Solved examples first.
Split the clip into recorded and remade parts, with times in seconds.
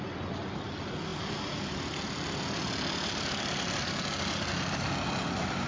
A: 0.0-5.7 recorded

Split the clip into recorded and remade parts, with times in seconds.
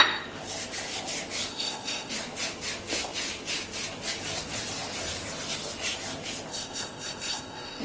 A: 0.0-1.5 recorded; 1.5-2.1 remade; 2.1-6.5 recorded; 6.5-7.8 remade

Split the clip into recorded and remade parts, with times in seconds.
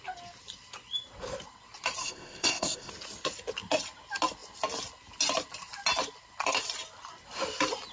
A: 0.0-2.0 recorded; 2.0-2.9 remade; 2.9-7.9 recorded